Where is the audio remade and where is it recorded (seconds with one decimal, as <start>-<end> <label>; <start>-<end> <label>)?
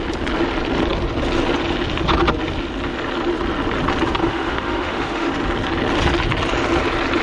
0.0-4.2 recorded; 4.2-5.3 remade; 5.3-7.2 recorded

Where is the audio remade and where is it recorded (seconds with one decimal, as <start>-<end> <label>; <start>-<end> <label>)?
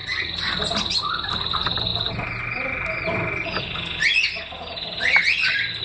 0.0-5.8 recorded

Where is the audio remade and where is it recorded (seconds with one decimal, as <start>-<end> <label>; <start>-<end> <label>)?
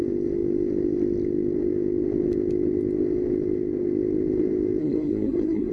0.0-4.8 recorded; 4.8-5.7 remade